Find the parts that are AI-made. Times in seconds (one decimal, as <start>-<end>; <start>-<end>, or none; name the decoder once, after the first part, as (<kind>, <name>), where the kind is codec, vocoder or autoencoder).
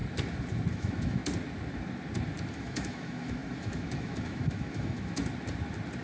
0.7-1.2 (autoencoder, DAC-VAE); 2.5-5.2